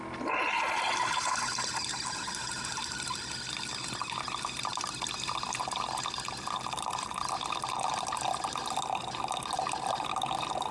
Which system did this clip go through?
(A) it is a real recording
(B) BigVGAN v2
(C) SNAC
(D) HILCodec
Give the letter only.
A